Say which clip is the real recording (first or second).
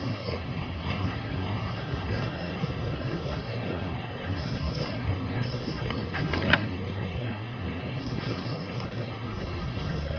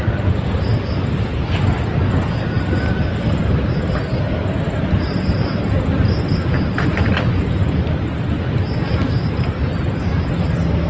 second